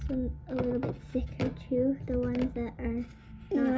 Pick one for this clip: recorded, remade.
recorded